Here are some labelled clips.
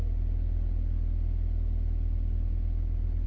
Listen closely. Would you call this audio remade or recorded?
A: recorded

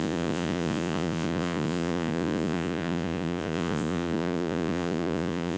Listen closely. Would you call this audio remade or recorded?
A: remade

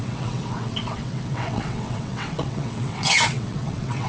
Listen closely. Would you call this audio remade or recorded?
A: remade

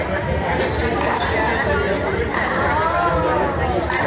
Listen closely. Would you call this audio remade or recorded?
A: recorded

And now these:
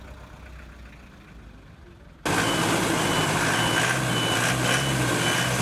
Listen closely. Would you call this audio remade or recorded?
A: recorded